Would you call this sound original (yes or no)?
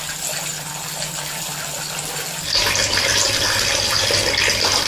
yes